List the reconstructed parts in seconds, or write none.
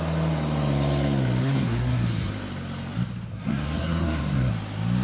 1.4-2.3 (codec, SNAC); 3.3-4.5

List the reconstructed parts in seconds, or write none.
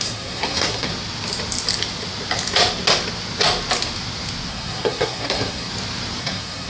0.0-0.9 (codec, SNAC); 4.5-5.7; 6.2-6.7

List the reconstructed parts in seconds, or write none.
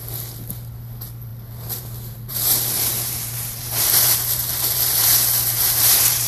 2.3-6.3 (vocoder, BigVGAN v2)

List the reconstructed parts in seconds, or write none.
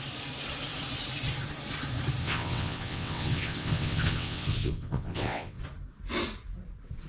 2.2-5.6 (vocoder, WaveNeXt)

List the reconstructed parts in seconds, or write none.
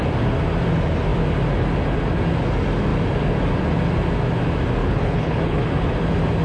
4.8-5.7 (codec, HILCodec)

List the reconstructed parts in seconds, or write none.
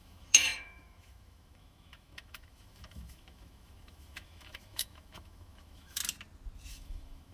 0.0-6.0 (autoencoder, DAC-VAE); 6.7-7.3